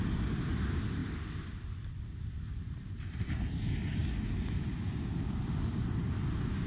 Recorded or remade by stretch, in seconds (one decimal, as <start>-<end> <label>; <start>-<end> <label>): 0.0-1.0 recorded; 1.0-3.6 remade; 3.6-4.0 recorded; 4.0-5.7 remade; 5.7-6.7 recorded

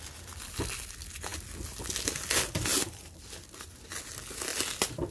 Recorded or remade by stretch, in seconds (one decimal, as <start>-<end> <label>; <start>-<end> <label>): 0.0-2.7 recorded; 2.7-3.2 remade; 3.2-4.5 recorded; 4.5-5.1 remade

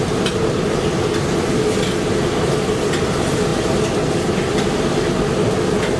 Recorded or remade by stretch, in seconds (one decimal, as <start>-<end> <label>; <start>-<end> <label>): 0.0-6.0 recorded

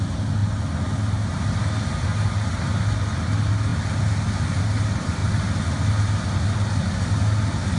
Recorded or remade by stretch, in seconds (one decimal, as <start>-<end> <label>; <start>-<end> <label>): 0.0-7.8 recorded

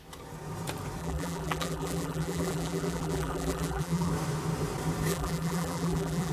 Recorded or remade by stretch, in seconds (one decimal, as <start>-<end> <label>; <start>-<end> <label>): 0.0-1.0 recorded; 1.0-4.1 remade; 4.1-5.1 recorded; 5.1-6.3 remade

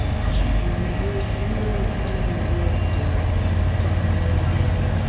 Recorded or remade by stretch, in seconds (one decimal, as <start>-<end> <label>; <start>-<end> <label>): 0.0-5.1 recorded

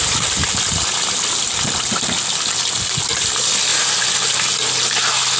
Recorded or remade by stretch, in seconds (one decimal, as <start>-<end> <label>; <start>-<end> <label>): 0.0-5.4 recorded